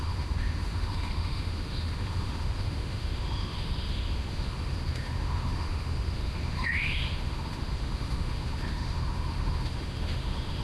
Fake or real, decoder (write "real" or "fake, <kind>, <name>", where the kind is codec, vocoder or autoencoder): fake, autoencoder, DAC-VAE